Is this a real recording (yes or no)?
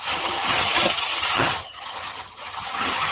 no